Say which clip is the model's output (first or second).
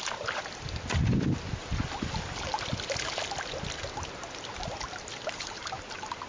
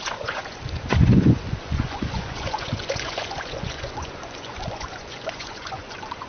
second